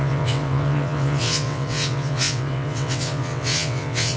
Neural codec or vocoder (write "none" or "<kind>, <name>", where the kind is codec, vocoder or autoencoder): vocoder, WaveNeXt